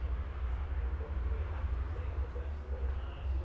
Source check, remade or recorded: recorded